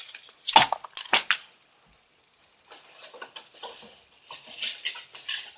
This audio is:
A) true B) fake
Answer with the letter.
A